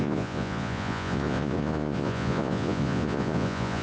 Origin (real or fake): fake